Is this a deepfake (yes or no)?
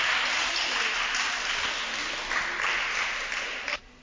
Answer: no